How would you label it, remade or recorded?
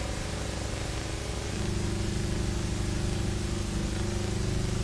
recorded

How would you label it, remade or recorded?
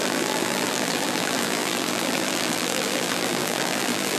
remade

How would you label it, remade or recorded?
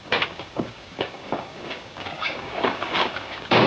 remade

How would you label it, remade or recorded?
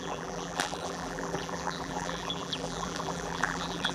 remade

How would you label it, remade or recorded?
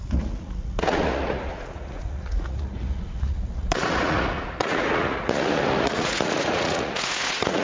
remade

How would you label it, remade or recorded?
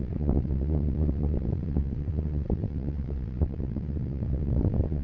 remade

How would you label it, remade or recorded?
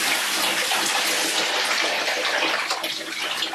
recorded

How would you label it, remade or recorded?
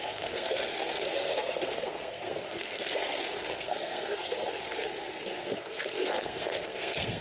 remade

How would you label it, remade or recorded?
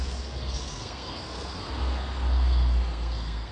remade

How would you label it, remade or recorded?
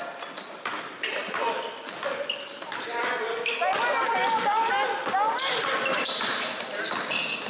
recorded